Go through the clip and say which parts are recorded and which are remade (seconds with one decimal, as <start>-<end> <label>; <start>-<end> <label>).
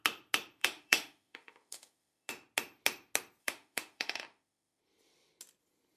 0.0-0.6 recorded; 0.6-2.3 remade; 2.3-3.4 recorded; 3.4-4.8 remade; 4.8-6.0 recorded